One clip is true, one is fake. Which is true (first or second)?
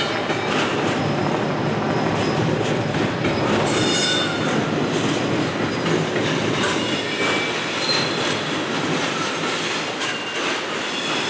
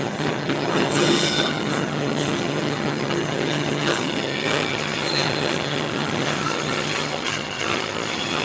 first